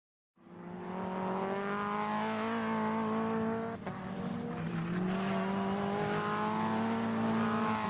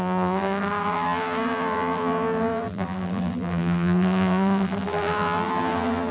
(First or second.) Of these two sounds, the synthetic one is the second